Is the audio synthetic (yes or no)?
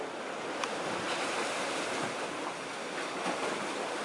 no